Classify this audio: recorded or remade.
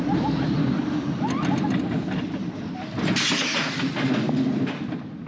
recorded